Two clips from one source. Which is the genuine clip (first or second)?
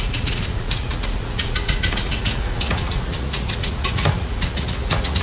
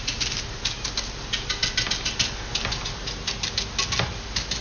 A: second